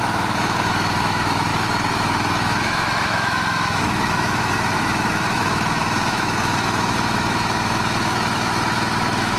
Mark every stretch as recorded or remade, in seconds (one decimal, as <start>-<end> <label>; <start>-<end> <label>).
0.0-9.4 remade